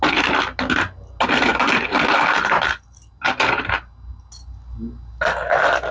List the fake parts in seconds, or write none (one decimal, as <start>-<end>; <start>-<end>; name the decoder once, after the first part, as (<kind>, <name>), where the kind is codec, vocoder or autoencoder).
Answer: none